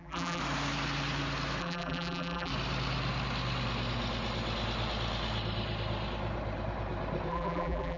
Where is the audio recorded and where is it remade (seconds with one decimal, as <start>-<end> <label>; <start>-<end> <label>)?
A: 0.0-0.4 remade; 0.4-1.6 recorded; 1.6-2.5 remade; 2.5-7.3 recorded; 7.3-8.0 remade